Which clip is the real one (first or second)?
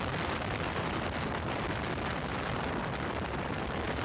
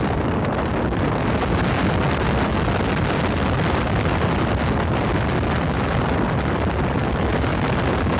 second